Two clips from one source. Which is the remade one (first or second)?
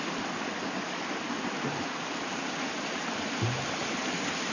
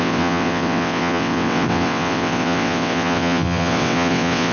second